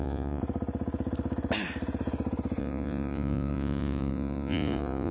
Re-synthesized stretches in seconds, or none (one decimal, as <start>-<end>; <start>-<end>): 0.0-0.4; 2.6-5.1